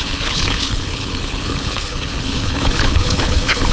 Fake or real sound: fake